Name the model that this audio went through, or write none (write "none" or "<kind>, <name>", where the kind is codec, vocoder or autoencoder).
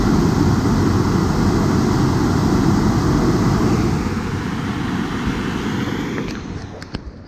none